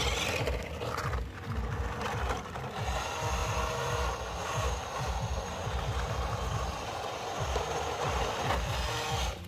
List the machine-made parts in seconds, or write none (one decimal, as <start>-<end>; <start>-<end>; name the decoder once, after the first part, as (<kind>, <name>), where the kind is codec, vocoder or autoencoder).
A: 3.4-8.3 (vocoder, BigVGAN v2)